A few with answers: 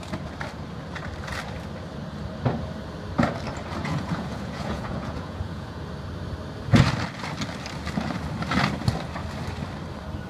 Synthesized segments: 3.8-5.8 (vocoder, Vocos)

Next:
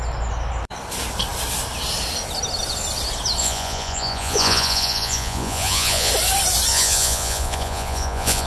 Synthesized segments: 3.4-6.1 (vocoder, Vocos); 6.7-8.5

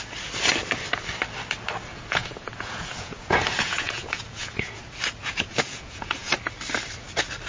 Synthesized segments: 1.9-4.8 (vocoder, Vocos); 5.2-6.3

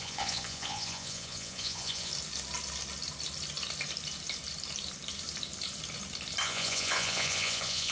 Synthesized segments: 0.0-2.1 (vocoder, Vocos); 6.4-7.9

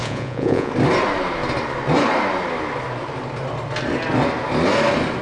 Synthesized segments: 0.0-0.7 (vocoder, Vocos)